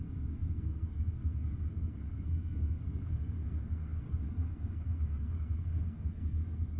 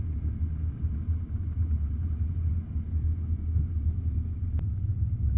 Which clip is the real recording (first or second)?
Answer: second